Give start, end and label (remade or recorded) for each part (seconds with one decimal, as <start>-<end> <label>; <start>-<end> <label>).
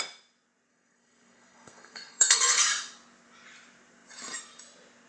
0.0-0.7 recorded; 0.7-2.6 remade; 2.6-5.1 recorded